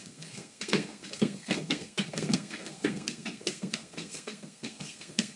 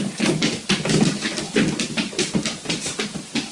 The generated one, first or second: first